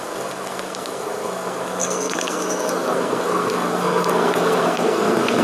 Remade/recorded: remade